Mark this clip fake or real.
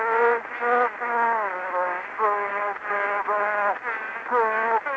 real